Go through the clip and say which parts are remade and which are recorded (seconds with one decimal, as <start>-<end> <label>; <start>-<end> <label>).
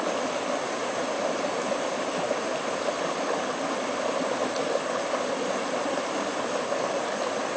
0.0-0.8 recorded; 0.8-2.8 remade; 2.8-7.6 recorded